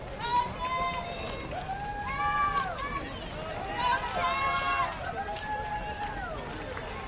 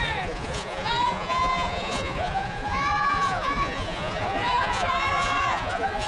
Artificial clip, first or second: second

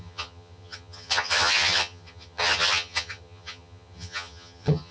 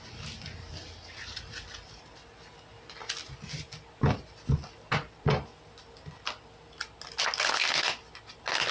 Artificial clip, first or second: first